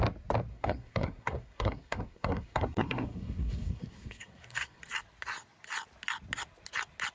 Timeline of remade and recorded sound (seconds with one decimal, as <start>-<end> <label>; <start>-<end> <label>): 0.0-0.5 recorded; 0.5-4.8 remade; 4.8-7.1 recorded